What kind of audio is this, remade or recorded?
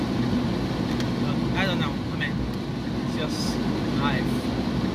recorded